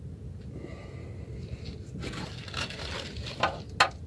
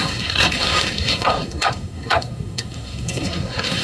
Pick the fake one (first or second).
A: second